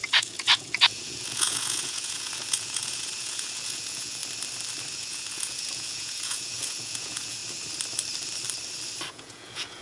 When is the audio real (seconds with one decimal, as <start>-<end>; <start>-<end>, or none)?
4.2-4.9; 7.4-9.1

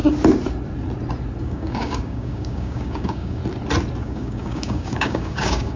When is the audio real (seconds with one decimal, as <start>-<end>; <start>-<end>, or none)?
0.0-1.4; 3.4-4.0

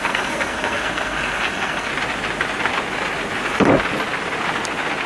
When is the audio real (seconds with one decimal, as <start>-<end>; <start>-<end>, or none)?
1.9-5.1

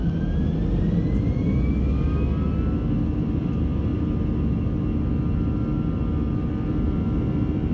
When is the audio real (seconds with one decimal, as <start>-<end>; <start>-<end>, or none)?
0.0-3.4; 3.9-6.5

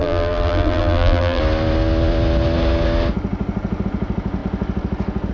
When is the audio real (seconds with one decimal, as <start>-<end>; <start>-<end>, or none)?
1.4-5.3

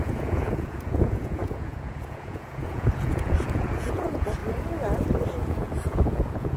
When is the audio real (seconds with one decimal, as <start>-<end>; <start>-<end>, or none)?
4.4-5.4

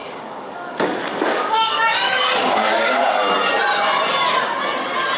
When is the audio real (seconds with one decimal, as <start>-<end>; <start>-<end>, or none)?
3.0-5.2

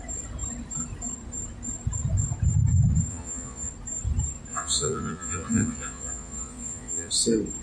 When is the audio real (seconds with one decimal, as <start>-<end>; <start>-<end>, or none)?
0.0-3.1; 3.7-4.5; 7.1-7.6